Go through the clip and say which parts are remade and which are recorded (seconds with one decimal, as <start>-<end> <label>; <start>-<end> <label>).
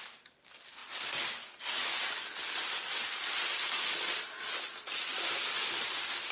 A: 0.0-0.8 recorded; 0.8-4.6 remade; 4.6-6.3 recorded